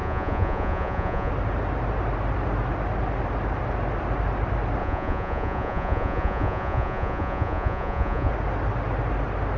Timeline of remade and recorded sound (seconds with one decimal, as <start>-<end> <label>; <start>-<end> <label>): 0.0-1.3 remade; 1.3-4.8 recorded; 4.8-8.3 remade; 8.3-9.6 recorded